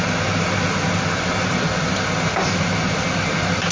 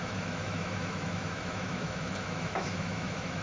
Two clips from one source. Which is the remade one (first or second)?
second